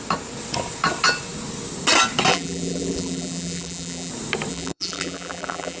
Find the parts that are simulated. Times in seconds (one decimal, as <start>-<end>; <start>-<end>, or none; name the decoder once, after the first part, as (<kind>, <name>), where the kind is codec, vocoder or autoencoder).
2.3-4.1 (vocoder, BigVGAN v2); 4.5-5.8

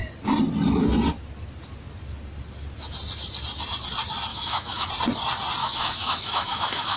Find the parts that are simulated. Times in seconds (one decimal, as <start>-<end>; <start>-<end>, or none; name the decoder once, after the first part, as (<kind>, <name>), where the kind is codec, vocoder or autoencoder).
4.3-4.9 (autoencoder, DAC-VAE); 5.6-7.0